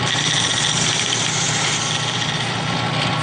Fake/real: real